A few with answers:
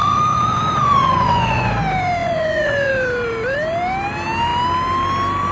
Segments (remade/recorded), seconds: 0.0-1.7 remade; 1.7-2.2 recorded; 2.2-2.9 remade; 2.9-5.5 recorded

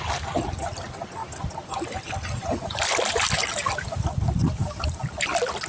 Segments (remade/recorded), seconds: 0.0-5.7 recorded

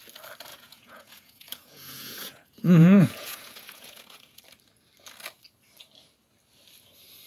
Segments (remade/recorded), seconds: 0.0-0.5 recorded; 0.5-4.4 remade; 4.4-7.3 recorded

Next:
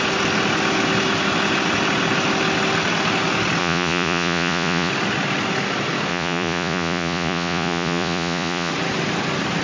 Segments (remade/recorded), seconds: 0.0-3.6 recorded; 3.6-4.9 remade; 4.9-6.1 recorded; 6.1-8.7 remade; 8.7-9.6 recorded

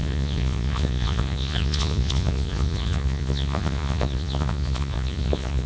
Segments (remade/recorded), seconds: 0.0-5.7 remade